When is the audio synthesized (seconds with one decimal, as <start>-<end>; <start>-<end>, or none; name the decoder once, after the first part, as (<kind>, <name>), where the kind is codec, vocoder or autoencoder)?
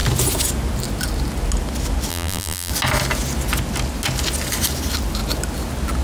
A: 2.1-2.7 (vocoder, BigVGAN v2)